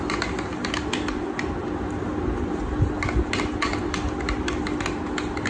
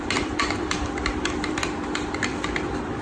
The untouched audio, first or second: first